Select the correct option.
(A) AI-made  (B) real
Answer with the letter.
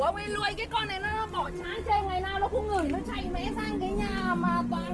B